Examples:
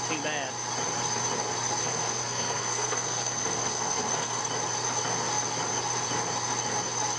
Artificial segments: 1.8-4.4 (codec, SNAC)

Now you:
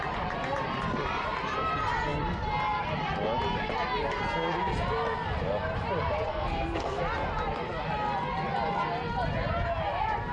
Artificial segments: 6.3-7.0 (codec, SNAC)